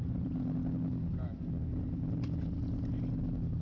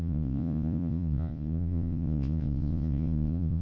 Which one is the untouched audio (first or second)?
first